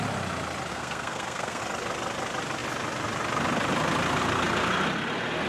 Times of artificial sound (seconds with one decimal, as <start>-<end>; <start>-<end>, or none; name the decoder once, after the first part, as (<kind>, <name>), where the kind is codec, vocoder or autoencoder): 0.7-1.6 (codec, SNAC)